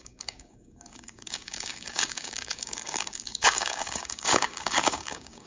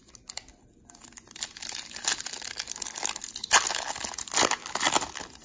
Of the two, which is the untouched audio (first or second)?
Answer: second